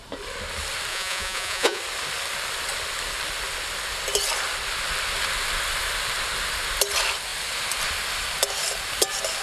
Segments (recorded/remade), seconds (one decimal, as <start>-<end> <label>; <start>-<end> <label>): 0.0-0.9 recorded; 0.9-1.8 remade; 1.8-9.4 recorded